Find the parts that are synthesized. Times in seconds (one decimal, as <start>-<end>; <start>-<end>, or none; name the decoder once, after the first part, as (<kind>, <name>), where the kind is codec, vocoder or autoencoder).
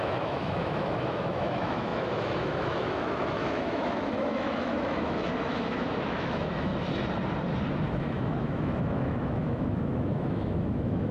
0.0-6.7 (autoencoder, DAC-VAE); 8.0-11.1